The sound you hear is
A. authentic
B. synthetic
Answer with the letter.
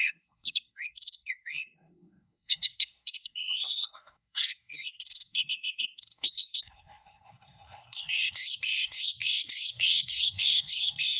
B